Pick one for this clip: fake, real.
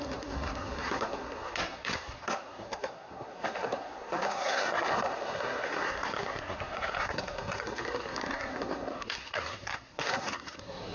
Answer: fake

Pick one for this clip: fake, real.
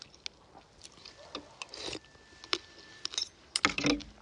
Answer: real